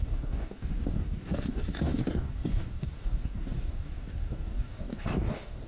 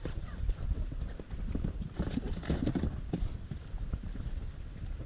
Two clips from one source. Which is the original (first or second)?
second